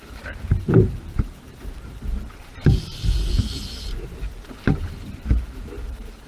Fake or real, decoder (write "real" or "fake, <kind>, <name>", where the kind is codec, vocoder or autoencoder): fake, vocoder, BigVGAN v2